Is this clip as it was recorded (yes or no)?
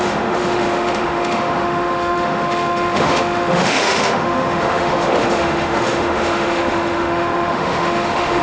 no